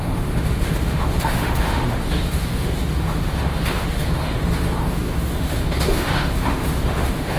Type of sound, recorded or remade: remade